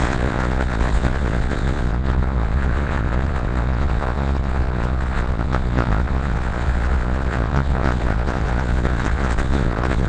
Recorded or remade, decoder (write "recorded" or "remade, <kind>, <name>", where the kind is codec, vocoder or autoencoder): remade, vocoder, Vocos